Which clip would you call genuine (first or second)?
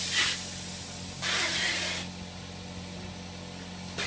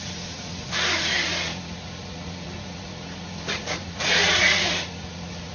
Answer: first